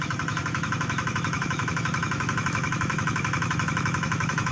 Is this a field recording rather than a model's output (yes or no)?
no